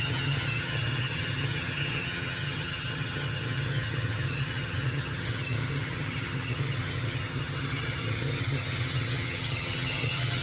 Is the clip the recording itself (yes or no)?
no